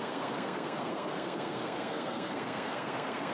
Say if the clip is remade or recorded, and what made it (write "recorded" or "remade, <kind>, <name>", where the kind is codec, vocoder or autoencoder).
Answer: remade, codec, SNAC